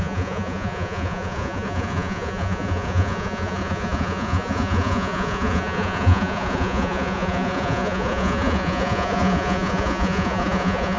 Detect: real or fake fake